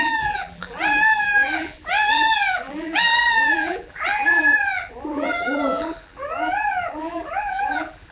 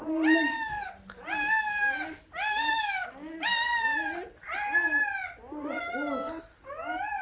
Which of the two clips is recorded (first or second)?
second